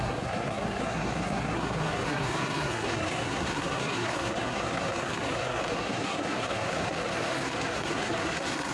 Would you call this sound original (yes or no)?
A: no